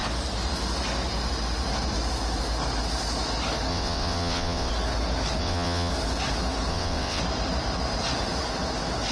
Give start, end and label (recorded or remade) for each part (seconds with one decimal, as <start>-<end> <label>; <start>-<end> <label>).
0.0-3.7 recorded; 3.7-4.7 remade; 4.7-5.4 recorded; 5.4-5.9 remade; 5.9-6.7 recorded; 6.7-7.2 remade; 7.2-9.1 recorded